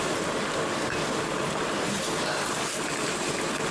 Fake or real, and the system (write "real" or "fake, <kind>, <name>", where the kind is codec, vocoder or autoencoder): real